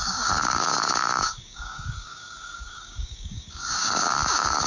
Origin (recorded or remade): remade